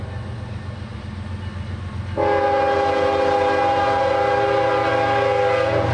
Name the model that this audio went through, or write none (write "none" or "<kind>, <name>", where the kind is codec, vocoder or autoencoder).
none